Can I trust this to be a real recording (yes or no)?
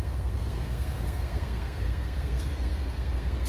no